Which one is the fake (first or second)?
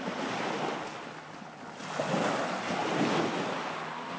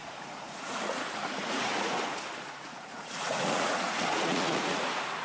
second